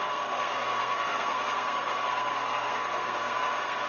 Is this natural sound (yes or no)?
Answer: no